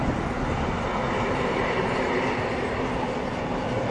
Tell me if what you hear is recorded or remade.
recorded